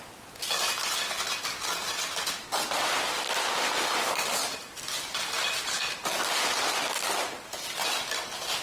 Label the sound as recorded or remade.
recorded